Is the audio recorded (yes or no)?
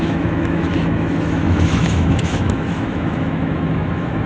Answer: no